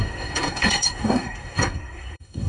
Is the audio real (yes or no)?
no